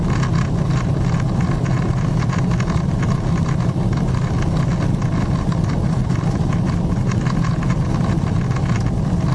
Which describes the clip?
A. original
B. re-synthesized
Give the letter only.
A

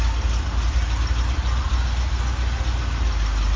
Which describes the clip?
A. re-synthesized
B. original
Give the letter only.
B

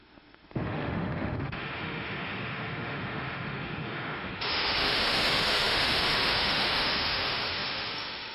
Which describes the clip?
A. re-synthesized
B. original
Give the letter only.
A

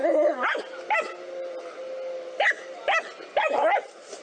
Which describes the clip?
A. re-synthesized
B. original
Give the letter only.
B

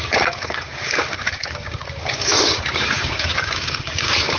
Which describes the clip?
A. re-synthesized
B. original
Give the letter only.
A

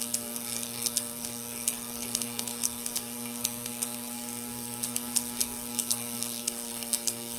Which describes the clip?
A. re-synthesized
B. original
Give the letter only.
A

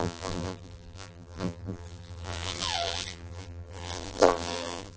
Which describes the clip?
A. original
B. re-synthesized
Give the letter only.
B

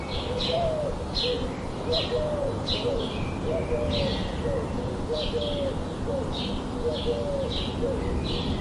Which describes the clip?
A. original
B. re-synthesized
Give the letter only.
A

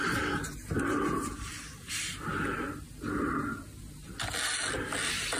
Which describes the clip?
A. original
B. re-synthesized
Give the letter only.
A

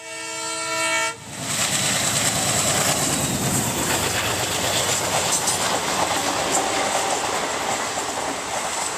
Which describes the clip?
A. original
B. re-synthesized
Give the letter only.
A